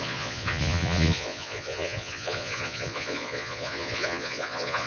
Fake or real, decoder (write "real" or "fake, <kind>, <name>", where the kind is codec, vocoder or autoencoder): fake, vocoder, Vocos